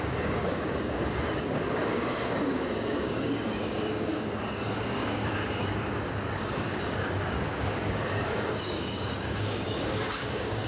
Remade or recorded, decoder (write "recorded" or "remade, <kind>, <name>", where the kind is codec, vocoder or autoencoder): remade, codec, DAC